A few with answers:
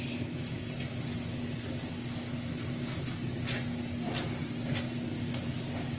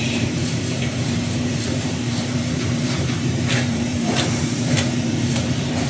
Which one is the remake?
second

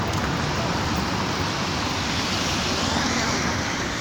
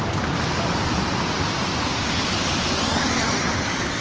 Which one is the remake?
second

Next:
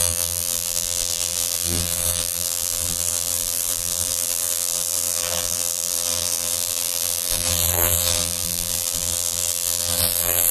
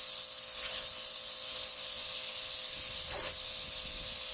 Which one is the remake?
first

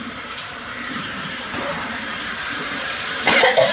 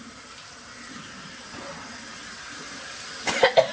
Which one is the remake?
first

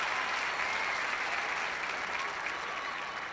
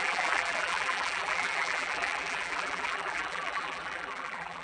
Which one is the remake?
second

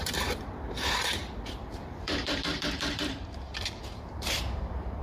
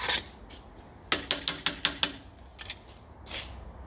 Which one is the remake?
first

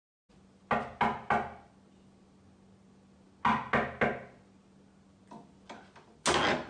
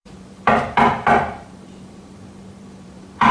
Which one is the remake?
second